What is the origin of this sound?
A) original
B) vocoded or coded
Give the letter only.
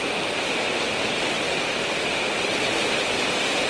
A